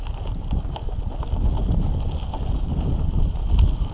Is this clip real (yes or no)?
yes